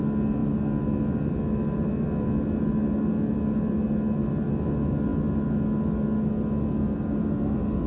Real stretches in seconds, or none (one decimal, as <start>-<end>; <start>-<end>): 0.0-7.9